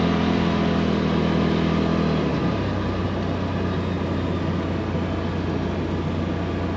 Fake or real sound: real